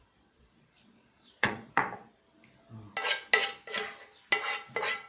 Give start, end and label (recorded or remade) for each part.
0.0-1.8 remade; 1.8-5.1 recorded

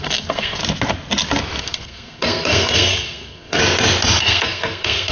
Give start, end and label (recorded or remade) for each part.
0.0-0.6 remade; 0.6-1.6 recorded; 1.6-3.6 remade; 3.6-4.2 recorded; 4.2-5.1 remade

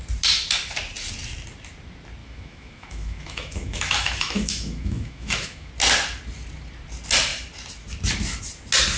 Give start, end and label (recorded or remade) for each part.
0.0-2.2 recorded; 2.2-5.7 remade; 5.7-9.0 recorded

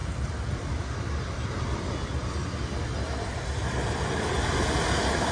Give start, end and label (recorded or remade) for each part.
0.0-5.3 remade

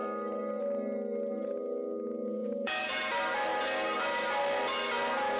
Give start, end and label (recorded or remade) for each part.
0.0-2.4 recorded; 2.4-3.1 remade; 3.1-5.4 recorded

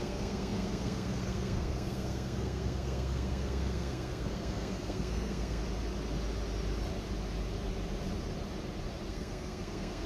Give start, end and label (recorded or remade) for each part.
0.0-5.6 remade; 5.6-9.1 recorded; 9.1-10.1 remade

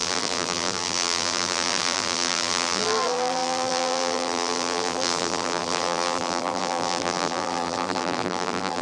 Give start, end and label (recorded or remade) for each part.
0.0-8.8 remade